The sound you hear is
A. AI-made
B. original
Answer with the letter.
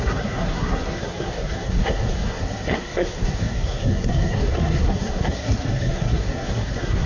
A